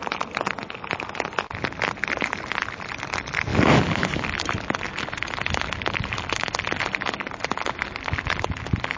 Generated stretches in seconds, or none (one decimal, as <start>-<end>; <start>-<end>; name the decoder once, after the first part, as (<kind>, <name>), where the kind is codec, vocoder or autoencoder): none